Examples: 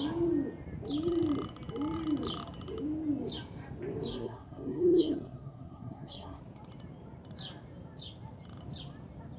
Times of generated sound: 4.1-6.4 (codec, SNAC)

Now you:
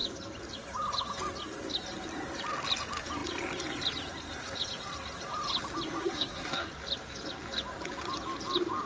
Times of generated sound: 6.0-6.7 (codec, SNAC)

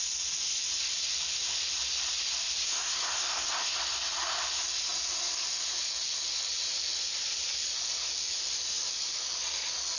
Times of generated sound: 2.6-3.8 (codec, SNAC)

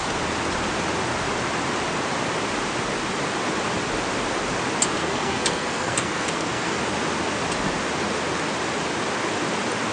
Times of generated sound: 5.0-6.8 (codec, SNAC)

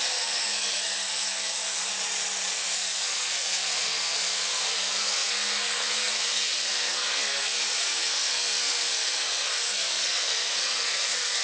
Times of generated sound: 0.0-1.9 (codec, SNAC); 2.5-11.4

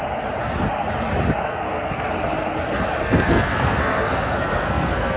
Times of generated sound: 1.5-2.1 (codec, SNAC); 3.0-5.2

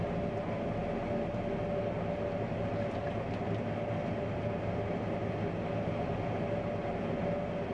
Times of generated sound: none